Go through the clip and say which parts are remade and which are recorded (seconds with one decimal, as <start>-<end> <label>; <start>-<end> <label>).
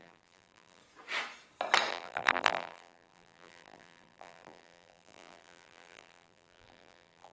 0.0-0.8 remade; 0.8-1.9 recorded; 1.9-7.3 remade